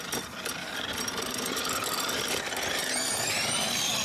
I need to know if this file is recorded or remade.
recorded